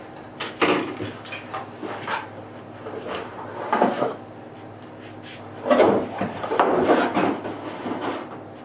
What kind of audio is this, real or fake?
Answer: real